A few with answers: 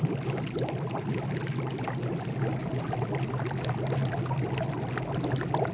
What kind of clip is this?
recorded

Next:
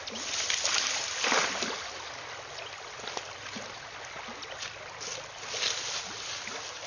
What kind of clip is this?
recorded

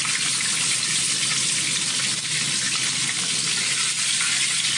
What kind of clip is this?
recorded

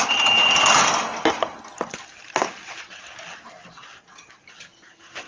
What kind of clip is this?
recorded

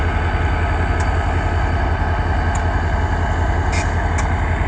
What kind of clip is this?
recorded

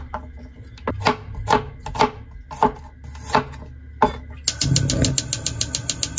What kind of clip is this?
recorded